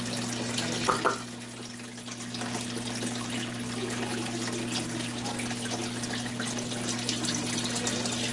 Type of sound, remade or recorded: recorded